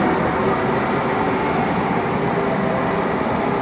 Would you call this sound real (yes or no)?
yes